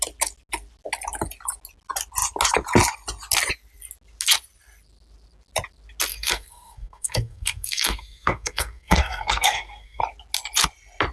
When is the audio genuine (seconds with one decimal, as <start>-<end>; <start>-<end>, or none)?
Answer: 0.0-6.1; 10.0-11.1